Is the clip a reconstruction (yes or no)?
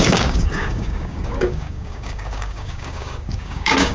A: yes